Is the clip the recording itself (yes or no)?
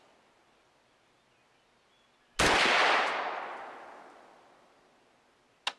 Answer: yes